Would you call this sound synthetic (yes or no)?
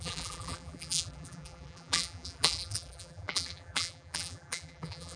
yes